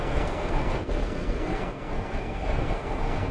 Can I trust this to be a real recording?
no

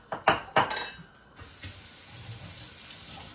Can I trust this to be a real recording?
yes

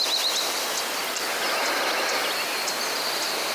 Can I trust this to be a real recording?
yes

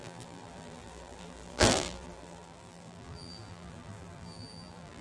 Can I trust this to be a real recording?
no